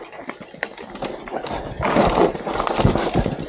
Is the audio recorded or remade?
recorded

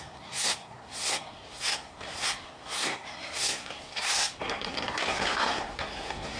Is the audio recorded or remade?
remade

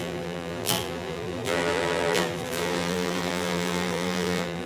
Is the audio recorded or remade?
remade